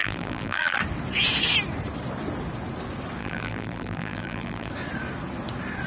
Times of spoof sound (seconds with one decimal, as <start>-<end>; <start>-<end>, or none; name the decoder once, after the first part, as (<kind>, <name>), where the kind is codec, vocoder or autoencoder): 0.0-0.8 (vocoder, BigVGAN v2); 3.2-4.7